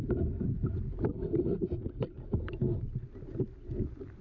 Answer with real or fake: real